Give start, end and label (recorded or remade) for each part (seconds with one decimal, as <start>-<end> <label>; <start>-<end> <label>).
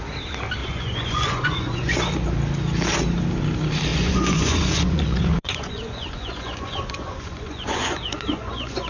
0.0-0.6 recorded; 0.6-2.0 remade; 2.0-3.9 recorded; 3.9-8.9 remade